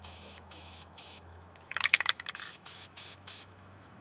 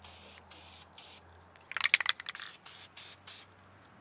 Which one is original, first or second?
second